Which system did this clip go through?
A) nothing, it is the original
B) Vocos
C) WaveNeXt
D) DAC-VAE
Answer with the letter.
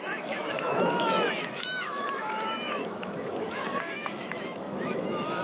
D